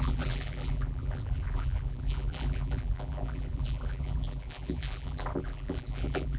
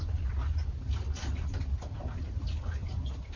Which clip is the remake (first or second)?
first